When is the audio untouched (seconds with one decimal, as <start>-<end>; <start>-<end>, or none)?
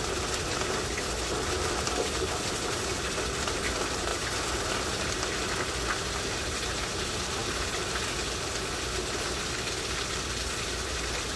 0.0-11.4